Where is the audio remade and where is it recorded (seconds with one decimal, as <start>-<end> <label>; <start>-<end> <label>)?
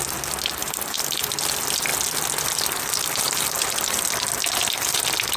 0.0-0.6 recorded; 0.6-1.3 remade; 1.3-5.4 recorded